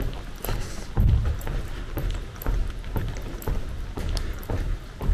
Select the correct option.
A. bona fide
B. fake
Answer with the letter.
A